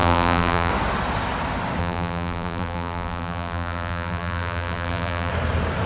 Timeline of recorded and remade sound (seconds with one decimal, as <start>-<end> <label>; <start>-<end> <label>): 0.0-0.7 remade; 0.7-1.8 recorded; 1.8-5.3 remade; 5.3-5.9 recorded